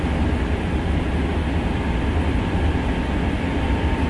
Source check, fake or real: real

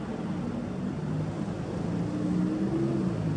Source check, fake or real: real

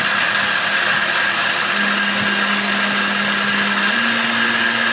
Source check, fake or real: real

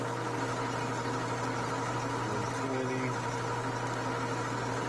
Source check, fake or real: real